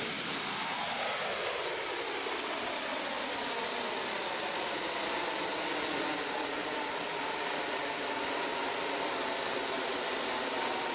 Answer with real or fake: real